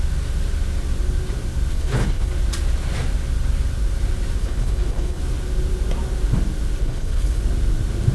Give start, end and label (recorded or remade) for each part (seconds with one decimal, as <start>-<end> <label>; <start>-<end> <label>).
0.0-1.7 recorded; 1.7-2.3 remade; 2.3-4.4 recorded; 4.4-5.2 remade; 5.2-6.8 recorded; 6.8-7.4 remade; 7.4-8.1 recorded